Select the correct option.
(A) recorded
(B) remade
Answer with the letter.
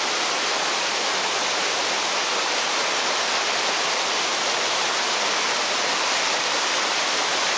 A